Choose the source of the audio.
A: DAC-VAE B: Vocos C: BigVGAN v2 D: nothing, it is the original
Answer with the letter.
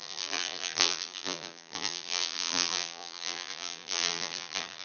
C